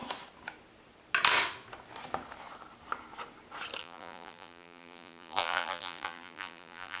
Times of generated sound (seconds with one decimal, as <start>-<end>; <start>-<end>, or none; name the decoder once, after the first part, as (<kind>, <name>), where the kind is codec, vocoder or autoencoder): 3.8-7.0 (vocoder, BigVGAN v2)